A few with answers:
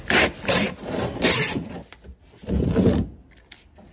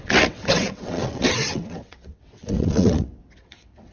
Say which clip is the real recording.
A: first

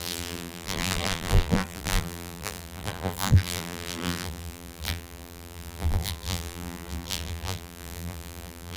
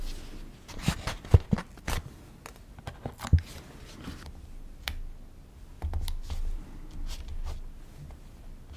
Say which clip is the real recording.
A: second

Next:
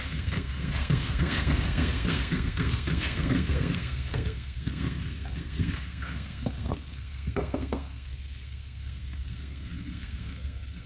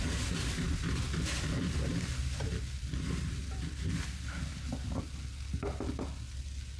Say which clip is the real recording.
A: second